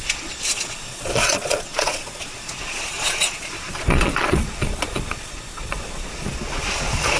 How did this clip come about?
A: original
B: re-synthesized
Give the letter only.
B